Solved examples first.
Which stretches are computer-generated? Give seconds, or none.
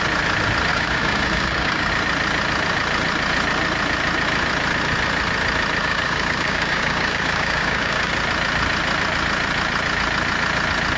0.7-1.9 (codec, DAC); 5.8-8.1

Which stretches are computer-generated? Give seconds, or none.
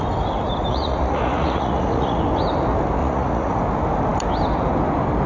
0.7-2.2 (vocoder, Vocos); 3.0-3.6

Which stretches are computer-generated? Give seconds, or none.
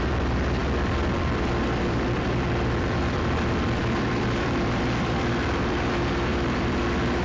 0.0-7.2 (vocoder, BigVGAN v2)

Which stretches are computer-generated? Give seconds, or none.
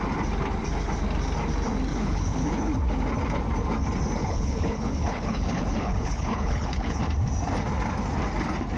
1.9-2.7 (codec, HILCodec); 4.2-7.0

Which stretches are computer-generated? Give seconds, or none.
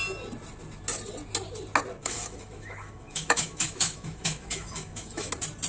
2.0-5.3 (autoencoder, DAC-VAE)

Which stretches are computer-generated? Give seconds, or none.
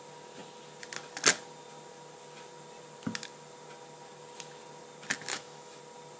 5.3-5.8 (autoencoder, DAC-VAE)